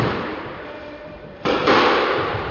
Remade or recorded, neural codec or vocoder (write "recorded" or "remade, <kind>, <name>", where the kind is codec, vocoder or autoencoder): remade, vocoder, BigVGAN v2